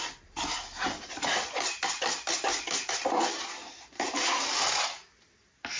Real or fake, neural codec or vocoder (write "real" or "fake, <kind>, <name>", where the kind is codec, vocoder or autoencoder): real